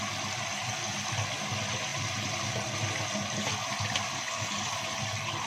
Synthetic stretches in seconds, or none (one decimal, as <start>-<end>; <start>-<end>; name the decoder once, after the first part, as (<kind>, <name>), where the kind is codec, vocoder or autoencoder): none